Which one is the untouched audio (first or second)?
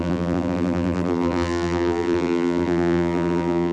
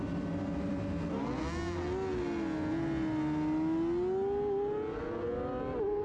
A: second